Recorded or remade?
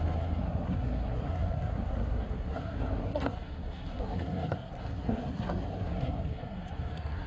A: remade